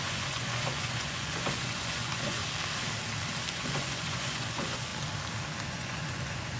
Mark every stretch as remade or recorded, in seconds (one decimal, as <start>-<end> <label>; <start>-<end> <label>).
0.0-2.4 remade; 2.4-3.5 recorded; 3.5-4.9 remade; 4.9-5.7 recorded; 5.7-6.6 remade